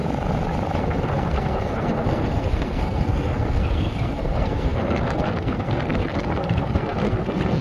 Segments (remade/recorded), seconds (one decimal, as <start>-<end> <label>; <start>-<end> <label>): 0.0-0.8 recorded; 0.8-7.6 remade